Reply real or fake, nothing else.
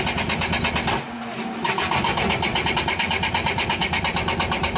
real